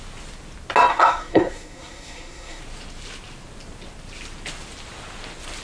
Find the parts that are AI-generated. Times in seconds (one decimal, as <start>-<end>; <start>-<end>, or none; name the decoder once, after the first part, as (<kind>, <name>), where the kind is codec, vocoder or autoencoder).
0.9-2.6 (codec, SNAC)